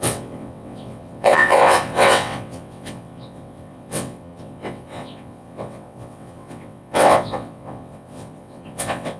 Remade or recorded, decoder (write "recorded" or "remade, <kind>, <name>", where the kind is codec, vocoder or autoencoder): remade, vocoder, WaveNeXt